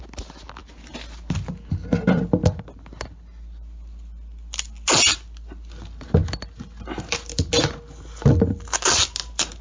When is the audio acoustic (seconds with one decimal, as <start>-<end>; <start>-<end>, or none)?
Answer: 0.0-9.6